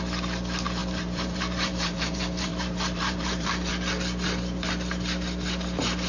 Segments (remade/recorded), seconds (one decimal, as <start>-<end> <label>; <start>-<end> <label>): 0.0-0.8 recorded; 0.8-3.7 remade; 3.7-6.1 recorded